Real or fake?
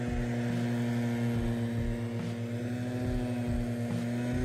real